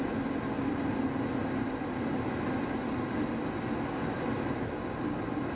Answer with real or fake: real